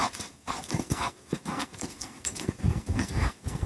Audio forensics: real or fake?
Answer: fake